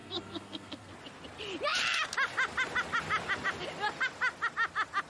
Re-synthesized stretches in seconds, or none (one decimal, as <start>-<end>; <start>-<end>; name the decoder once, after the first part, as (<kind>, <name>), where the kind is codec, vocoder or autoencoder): 0.0-0.9 (codec, SNAC)

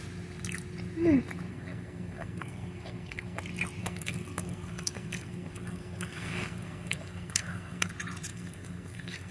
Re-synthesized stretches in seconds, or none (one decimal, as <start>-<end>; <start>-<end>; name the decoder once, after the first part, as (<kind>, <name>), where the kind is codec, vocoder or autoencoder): 1.5-3.4 (codec, SNAC); 3.8-7.9; 8.3-9.3

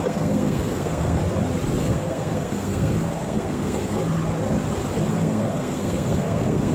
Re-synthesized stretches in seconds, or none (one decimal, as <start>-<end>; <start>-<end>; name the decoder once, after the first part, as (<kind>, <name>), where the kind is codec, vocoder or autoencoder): 0.0-1.2 (codec, SNAC); 1.8-4.0; 5.1-6.7

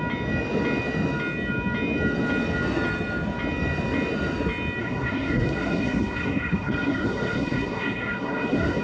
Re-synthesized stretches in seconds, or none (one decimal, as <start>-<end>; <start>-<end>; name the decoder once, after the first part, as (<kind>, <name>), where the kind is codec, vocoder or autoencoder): 4.8-8.8 (codec, SNAC)

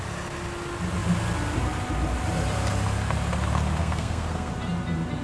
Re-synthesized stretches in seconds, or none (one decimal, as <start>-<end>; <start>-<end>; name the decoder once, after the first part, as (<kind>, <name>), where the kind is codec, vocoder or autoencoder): 3.8-4.5 (codec, SNAC)